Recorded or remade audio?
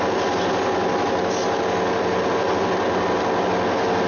recorded